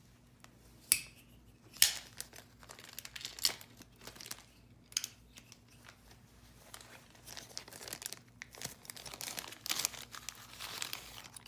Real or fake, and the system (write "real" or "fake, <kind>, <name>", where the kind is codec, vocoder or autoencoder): real